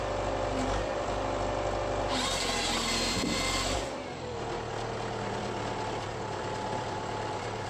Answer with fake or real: fake